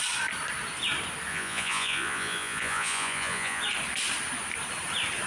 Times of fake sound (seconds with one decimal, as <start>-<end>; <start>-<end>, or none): 1.3-3.6